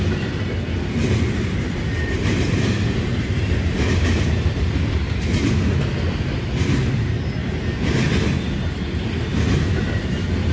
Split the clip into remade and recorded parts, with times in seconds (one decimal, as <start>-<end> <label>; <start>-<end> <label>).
0.0-1.0 recorded; 1.0-5.6 remade; 5.6-10.5 recorded